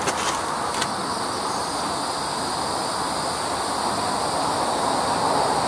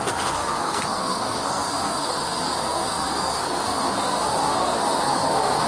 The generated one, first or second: second